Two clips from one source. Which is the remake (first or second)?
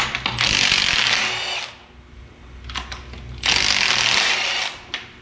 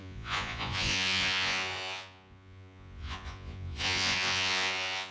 second